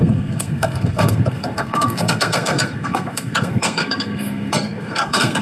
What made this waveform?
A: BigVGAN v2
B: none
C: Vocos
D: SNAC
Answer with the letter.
D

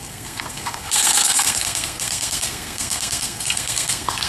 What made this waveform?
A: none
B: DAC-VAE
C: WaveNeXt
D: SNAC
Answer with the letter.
D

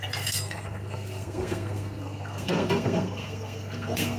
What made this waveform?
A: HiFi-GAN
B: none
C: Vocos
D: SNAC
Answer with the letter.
D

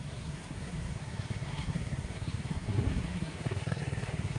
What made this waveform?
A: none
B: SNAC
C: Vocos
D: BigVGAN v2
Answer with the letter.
B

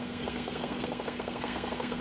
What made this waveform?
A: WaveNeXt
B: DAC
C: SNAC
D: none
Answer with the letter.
C